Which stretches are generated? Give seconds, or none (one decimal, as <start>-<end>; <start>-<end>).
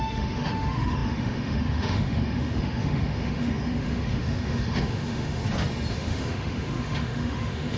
0.0-5.4; 5.9-7.8